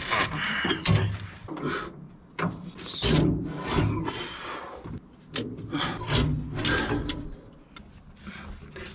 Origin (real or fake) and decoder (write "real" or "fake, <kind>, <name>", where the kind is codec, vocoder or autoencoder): real